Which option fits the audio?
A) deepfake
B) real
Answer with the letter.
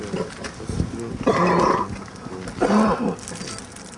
B